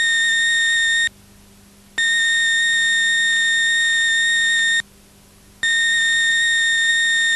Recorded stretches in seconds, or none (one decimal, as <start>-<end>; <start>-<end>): 0.0-7.4